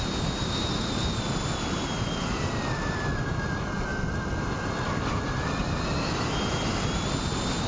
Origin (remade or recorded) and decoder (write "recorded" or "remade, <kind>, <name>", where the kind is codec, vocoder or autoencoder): recorded